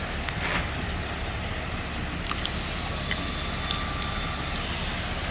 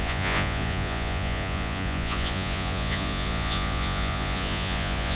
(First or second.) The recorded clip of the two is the first